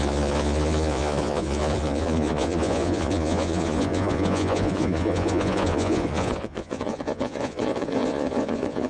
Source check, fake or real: fake